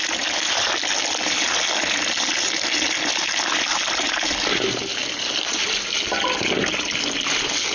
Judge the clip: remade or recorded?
recorded